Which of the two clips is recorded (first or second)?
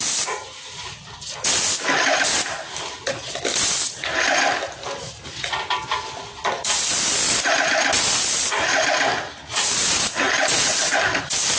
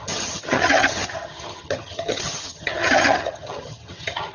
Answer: first